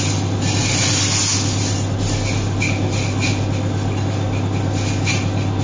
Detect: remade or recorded recorded